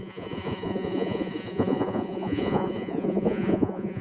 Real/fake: fake